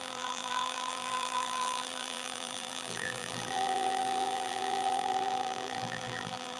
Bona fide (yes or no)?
no